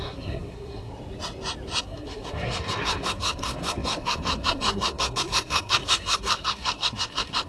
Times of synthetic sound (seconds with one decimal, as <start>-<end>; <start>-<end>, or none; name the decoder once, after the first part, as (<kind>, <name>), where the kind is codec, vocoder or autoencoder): 0.0-0.9 (codec, SNAC); 1.8-7.5